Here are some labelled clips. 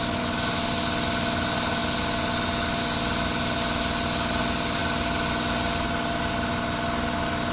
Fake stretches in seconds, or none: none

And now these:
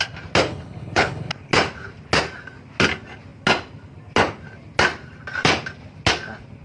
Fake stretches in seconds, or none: 0.5-1.3 (codec, HILCodec)

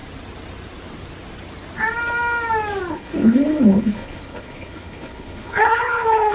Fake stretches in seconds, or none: 2.9-6.3 (codec, HILCodec)